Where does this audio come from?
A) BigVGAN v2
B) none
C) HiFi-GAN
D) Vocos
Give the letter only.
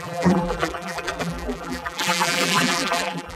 A